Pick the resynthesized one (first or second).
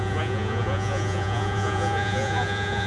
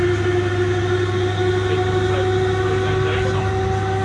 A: first